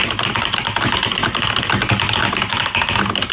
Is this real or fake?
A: real